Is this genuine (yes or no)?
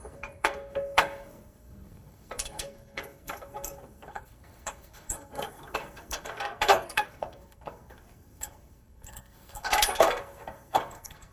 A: no